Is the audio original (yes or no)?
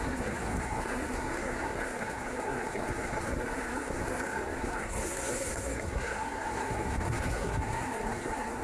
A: no